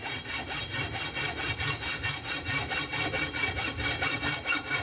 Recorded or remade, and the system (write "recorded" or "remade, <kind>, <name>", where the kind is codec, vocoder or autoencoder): recorded